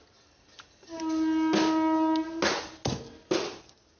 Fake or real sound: real